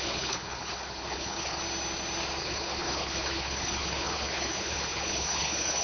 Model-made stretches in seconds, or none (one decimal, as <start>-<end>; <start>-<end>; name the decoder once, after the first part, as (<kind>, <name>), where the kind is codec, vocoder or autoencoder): 0.0-1.6 (codec, HILCodec); 2.4-5.8

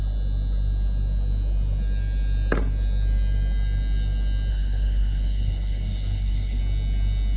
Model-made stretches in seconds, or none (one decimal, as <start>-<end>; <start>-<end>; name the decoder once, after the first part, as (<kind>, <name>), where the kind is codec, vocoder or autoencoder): 4.5-6.6 (codec, HILCodec)

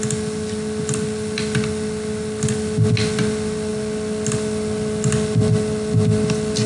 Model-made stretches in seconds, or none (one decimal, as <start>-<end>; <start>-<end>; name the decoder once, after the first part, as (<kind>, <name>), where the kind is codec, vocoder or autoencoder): none

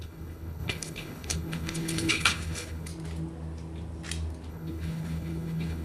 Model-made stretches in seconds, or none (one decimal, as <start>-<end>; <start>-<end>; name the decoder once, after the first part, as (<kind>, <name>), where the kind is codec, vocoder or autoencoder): 0.0-2.9 (codec, HILCodec); 4.5-5.8

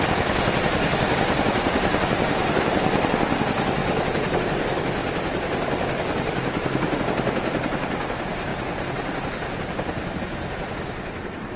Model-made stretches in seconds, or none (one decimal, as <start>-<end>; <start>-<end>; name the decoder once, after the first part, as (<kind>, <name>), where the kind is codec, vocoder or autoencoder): none